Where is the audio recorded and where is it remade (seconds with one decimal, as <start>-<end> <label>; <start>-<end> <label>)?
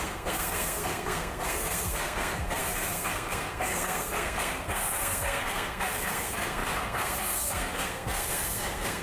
0.0-9.0 remade